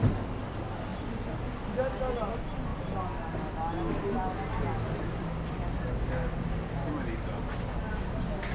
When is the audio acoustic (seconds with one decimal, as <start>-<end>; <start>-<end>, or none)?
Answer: 0.0-8.5